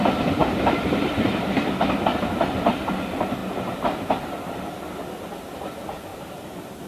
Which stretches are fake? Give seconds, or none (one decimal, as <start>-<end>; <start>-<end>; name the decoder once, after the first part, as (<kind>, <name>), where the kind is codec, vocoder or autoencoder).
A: 0.4-1.3 (vocoder, BigVGAN v2); 6.1-6.9